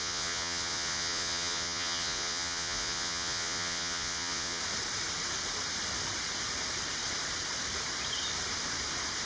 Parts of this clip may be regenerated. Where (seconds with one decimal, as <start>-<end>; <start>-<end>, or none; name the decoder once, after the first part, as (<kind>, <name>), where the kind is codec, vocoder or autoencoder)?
0.0-4.6 (vocoder, Vocos)